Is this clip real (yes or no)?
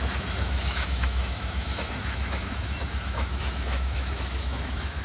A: no